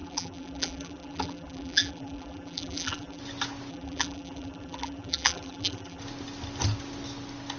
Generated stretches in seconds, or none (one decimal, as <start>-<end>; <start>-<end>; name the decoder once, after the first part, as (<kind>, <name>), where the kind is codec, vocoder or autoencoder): 0.0-3.2 (vocoder, BigVGAN v2); 3.7-6.0